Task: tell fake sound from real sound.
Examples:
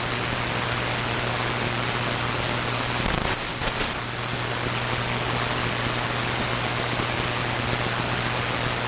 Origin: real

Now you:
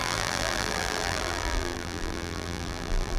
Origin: fake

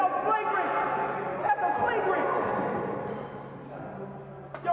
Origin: real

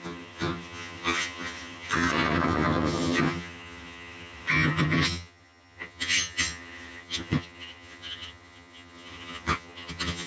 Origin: fake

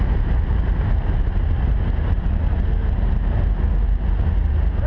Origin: real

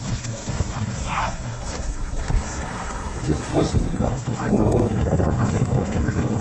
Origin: fake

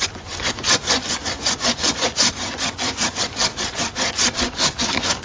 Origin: fake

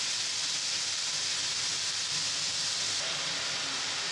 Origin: real